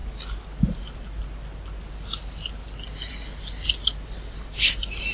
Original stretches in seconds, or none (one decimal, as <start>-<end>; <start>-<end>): 0.0-5.1